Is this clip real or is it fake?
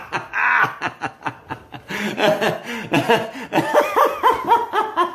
real